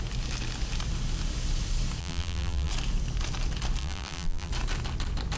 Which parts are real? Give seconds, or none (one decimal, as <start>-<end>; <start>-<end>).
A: 0.0-2.0; 2.7-3.8; 4.5-5.4